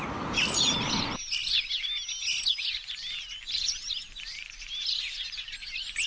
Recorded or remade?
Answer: recorded